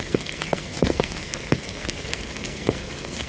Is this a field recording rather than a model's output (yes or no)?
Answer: no